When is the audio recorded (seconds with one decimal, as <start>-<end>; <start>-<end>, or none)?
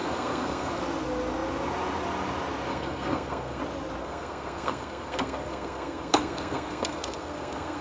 0.8-2.7; 3.6-4.0